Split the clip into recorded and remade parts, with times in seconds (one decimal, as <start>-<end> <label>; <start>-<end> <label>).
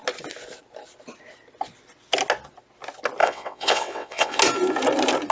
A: 0.0-3.2 recorded; 3.2-4.4 remade; 4.4-5.3 recorded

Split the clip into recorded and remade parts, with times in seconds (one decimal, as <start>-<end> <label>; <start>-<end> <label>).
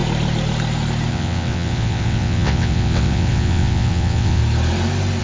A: 0.0-1.1 recorded; 1.1-4.4 remade; 4.4-5.2 recorded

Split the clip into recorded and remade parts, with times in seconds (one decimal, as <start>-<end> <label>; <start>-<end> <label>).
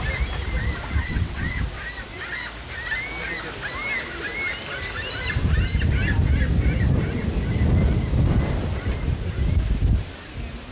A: 0.0-1.0 recorded; 1.0-1.5 remade; 1.5-10.7 recorded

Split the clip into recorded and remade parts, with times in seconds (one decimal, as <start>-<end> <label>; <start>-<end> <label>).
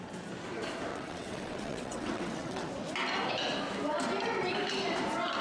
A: 0.0-0.9 recorded; 0.9-2.7 remade; 2.7-5.4 recorded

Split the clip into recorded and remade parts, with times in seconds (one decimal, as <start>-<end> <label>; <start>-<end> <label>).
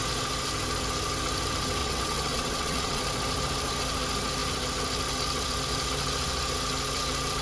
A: 0.0-1.8 recorded; 1.8-3.0 remade; 3.0-7.4 recorded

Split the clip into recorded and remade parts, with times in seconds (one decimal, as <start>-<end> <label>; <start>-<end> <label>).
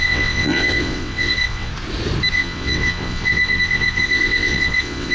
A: 0.0-1.7 remade; 1.7-2.3 recorded; 2.3-5.1 remade